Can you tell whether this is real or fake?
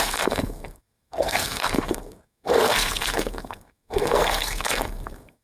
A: fake